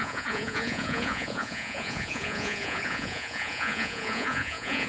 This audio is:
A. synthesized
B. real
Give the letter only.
A